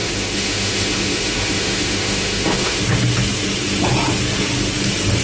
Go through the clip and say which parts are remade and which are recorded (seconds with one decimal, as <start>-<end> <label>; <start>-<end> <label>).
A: 0.0-2.8 remade; 2.8-5.2 recorded